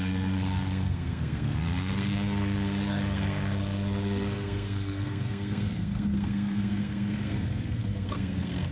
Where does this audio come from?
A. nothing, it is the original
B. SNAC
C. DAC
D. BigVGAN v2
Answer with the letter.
B